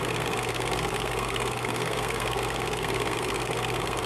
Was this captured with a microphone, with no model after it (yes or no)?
no